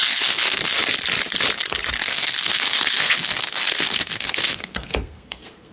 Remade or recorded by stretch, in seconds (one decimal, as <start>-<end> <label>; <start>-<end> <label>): 0.0-0.8 remade; 0.8-2.0 recorded; 2.0-5.7 remade

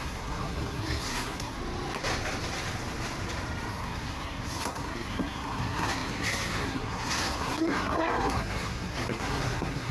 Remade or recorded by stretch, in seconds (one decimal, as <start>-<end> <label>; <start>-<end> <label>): 0.0-1.6 remade; 1.6-3.7 recorded; 3.7-9.9 remade

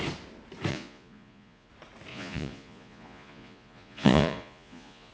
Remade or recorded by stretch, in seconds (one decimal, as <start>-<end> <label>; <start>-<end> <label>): 0.0-0.7 recorded; 0.7-1.7 remade; 1.7-2.1 recorded; 2.1-5.1 remade

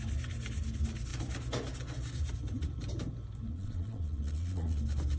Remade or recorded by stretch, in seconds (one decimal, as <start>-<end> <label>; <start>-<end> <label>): 0.0-3.5 recorded; 3.5-4.8 remade; 4.8-5.2 recorded

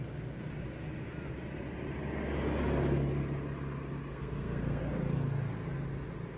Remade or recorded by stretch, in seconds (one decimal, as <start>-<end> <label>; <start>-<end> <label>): 0.0-4.1 recorded; 4.1-4.9 remade; 4.9-6.4 recorded

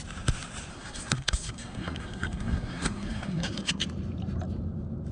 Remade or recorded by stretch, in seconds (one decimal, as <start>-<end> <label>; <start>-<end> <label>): 0.0-0.7 recorded; 0.7-3.8 remade; 3.8-5.1 recorded

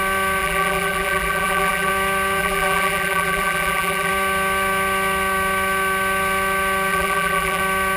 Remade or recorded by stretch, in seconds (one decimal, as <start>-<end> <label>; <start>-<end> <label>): 0.0-0.4 recorded; 0.4-1.9 remade; 1.9-2.4 recorded; 2.4-4.1 remade; 4.1-6.9 recorded; 6.9-7.6 remade; 7.6-8.0 recorded